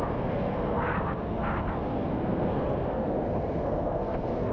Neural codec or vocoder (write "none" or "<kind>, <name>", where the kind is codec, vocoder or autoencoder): codec, SNAC